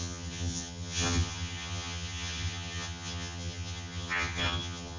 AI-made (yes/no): yes